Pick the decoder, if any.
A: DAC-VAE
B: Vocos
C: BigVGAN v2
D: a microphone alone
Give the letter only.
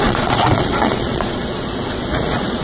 B